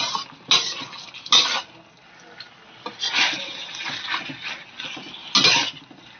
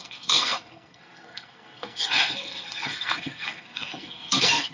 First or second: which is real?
first